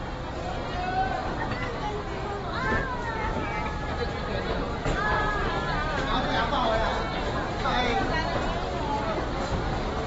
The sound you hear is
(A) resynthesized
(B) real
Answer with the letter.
B